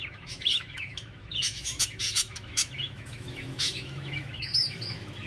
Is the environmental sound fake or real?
fake